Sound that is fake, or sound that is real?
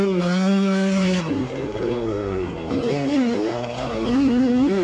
fake